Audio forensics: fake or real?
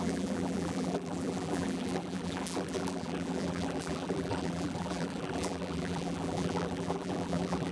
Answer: fake